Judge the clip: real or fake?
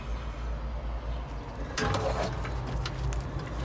real